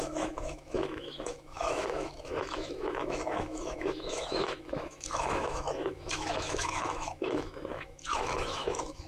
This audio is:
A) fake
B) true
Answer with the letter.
A